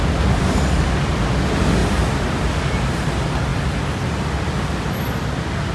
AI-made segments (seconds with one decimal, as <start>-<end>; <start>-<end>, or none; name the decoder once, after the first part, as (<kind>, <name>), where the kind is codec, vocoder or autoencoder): none